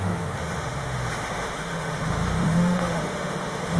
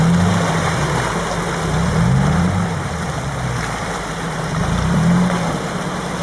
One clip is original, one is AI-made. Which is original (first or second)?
second